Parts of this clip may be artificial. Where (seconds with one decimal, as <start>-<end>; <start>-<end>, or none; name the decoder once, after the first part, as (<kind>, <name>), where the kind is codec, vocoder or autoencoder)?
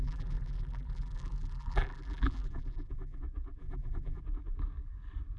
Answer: 0.0-3.2 (vocoder, BigVGAN v2); 3.6-4.2